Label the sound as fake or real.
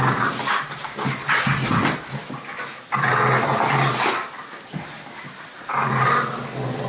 real